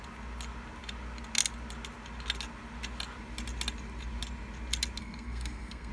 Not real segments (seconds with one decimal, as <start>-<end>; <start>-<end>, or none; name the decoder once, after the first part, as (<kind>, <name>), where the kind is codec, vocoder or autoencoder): 5.0-5.9 (codec, SNAC)